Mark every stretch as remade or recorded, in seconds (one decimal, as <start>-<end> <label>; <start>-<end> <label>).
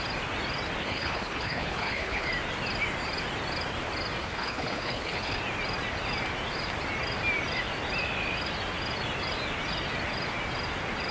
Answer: 0.0-0.8 recorded; 0.8-2.3 remade; 2.3-4.2 recorded; 4.2-5.4 remade; 5.4-11.1 recorded